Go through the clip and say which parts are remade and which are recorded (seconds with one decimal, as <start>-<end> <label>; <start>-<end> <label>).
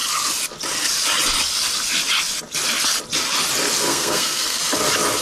0.0-3.9 recorded; 3.9-4.6 remade; 4.6-5.2 recorded